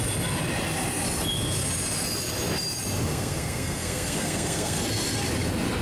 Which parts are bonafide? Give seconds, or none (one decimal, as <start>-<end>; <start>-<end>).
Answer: 0.0-3.1; 4.8-5.8